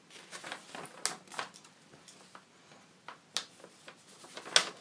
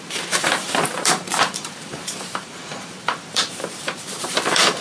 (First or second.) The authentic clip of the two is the first